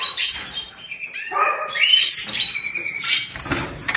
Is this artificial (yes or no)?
yes